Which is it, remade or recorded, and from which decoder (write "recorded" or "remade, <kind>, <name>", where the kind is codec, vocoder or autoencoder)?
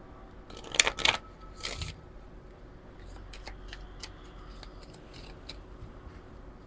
recorded